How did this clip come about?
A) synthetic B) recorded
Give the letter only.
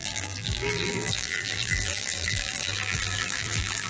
A